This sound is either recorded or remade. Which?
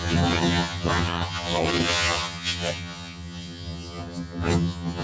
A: remade